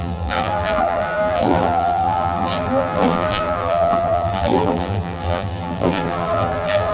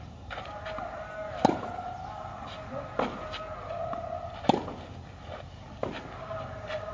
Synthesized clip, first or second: first